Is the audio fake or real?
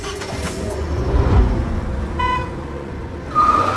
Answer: fake